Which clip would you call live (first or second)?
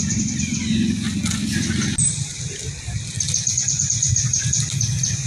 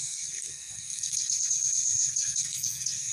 first